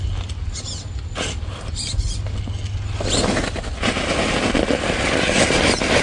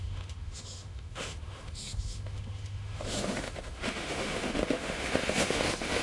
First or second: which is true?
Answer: first